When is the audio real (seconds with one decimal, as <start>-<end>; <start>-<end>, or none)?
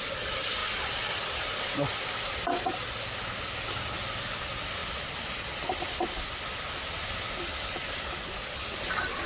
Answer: 0.0-9.3